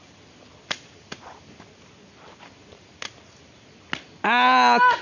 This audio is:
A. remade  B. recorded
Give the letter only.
B